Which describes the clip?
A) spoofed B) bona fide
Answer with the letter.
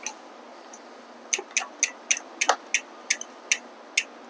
B